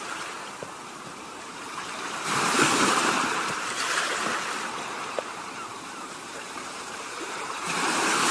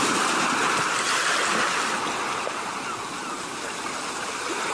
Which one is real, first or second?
second